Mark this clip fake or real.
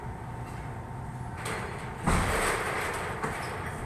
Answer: real